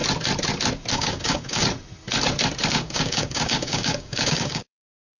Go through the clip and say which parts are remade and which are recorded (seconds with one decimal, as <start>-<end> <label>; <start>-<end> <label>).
0.0-0.9 recorded; 0.9-1.6 remade; 1.6-2.7 recorded; 2.7-5.2 remade